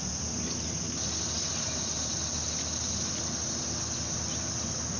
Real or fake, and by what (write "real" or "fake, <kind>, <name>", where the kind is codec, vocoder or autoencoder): real